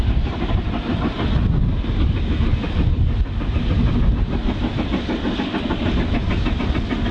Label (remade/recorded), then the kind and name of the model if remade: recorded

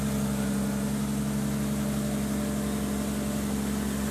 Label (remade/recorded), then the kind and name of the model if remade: recorded